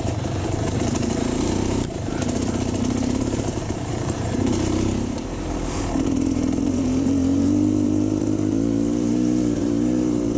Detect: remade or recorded remade